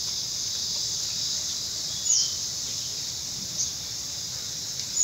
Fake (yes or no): yes